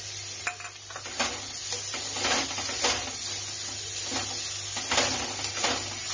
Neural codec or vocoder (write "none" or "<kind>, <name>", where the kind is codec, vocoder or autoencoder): none